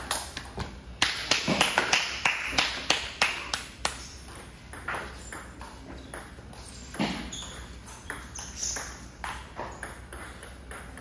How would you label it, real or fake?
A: real